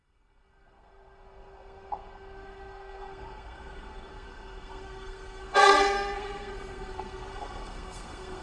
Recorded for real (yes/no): no